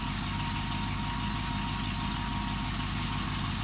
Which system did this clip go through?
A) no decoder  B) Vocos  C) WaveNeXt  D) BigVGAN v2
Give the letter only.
A